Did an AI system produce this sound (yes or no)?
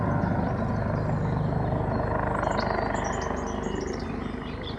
no